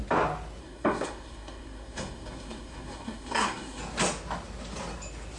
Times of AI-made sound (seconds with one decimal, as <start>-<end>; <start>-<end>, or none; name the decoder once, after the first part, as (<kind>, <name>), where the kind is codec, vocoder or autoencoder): 0.6-3.8 (codec, SNAC)